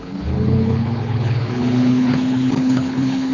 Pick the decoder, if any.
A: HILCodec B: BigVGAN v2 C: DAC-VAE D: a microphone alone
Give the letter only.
A